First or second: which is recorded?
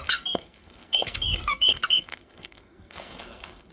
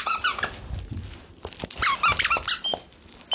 second